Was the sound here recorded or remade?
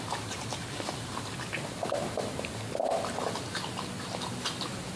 recorded